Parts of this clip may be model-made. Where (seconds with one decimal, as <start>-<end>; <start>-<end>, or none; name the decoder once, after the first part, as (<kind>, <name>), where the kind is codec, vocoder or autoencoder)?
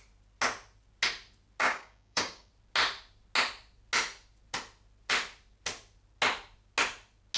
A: 1.6-2.5 (codec, DAC)